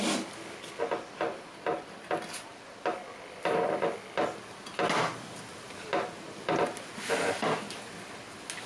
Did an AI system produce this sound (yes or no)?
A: no